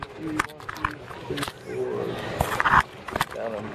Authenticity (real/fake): real